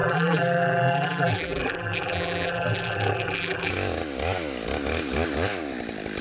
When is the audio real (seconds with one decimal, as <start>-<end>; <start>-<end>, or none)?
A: 3.7-6.2